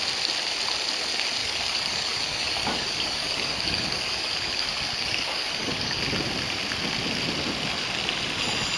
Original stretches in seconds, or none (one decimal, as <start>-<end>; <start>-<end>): 0.0-1.4; 6.0-8.8